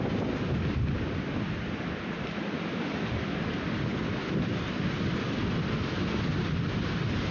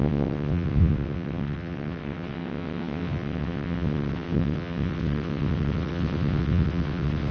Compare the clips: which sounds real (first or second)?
first